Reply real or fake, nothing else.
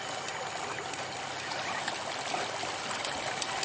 real